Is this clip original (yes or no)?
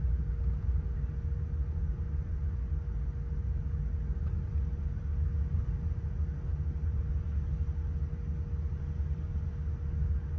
yes